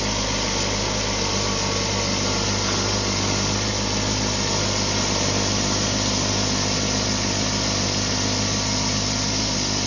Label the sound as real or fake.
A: real